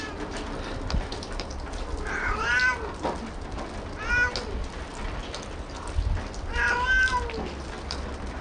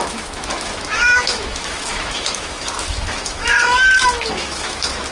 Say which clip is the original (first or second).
first